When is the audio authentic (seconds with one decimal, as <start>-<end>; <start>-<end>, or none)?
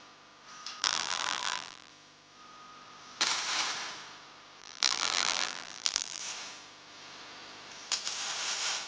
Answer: 0.0-0.8; 1.9-4.6; 6.2-8.9